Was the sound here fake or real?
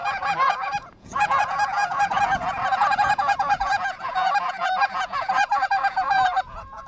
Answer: fake